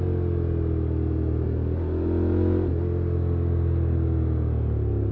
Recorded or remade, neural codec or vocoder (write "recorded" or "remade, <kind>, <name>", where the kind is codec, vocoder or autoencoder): recorded